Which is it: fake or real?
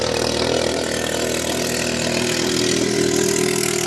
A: real